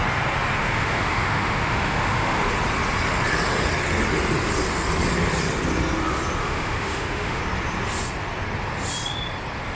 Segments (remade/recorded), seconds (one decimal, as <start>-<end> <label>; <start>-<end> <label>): 0.0-0.6 recorded; 0.6-2.4 remade; 2.4-6.4 recorded; 6.4-7.4 remade; 7.4-9.7 recorded